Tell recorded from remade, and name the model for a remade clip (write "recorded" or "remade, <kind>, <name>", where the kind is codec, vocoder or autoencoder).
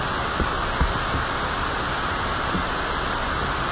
recorded